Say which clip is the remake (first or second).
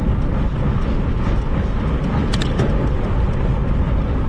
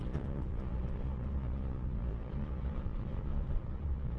second